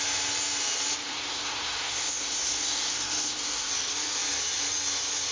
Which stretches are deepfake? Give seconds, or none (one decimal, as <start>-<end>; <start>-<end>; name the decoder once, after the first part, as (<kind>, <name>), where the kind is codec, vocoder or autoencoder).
1.0-3.7 (codec, SNAC)